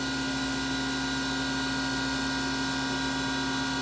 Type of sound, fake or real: real